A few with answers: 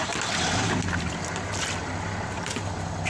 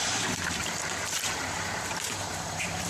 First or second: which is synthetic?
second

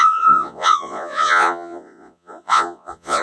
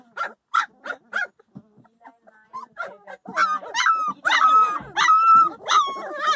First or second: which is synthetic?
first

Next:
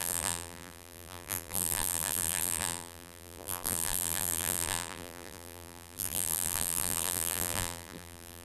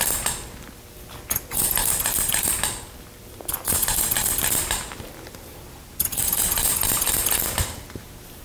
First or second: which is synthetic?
first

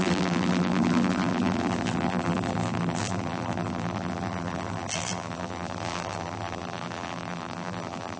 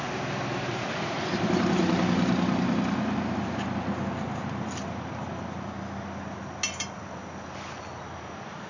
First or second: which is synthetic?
first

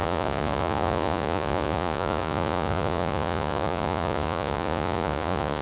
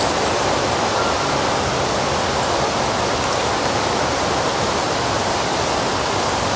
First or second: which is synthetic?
first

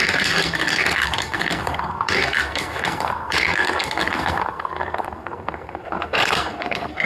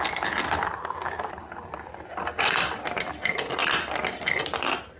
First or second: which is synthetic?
first